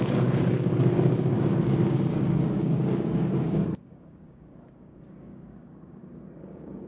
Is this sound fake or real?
fake